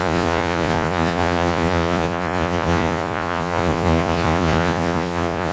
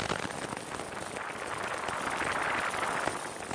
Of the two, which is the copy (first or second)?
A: first